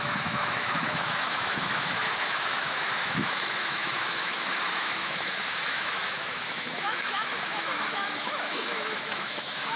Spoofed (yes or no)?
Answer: yes